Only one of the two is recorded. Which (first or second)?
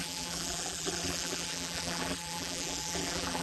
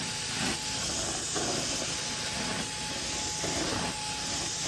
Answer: second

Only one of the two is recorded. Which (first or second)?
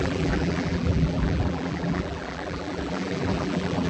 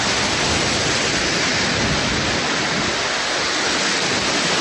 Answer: second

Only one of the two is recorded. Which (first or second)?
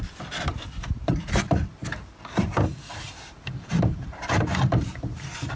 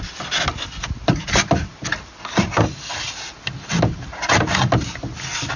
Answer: second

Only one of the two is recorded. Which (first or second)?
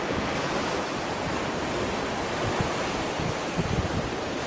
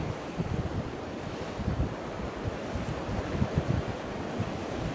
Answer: first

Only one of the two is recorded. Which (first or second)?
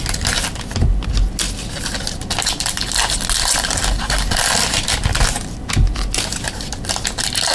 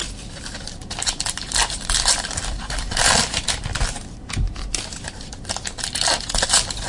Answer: first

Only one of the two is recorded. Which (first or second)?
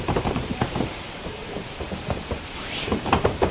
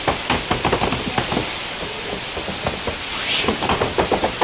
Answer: second